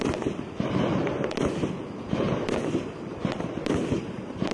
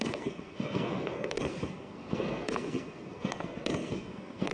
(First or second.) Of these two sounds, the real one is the first